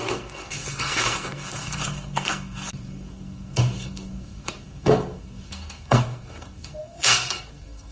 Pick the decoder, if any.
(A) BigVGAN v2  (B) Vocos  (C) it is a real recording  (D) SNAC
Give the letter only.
D